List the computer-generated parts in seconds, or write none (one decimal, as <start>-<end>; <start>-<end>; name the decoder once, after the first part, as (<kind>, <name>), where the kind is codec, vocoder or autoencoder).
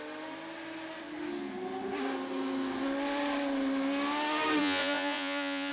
4.6-5.7 (vocoder, Vocos)